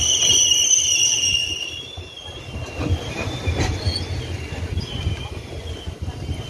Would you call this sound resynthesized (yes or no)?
no